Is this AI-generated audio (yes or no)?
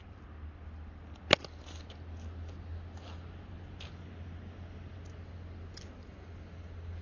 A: no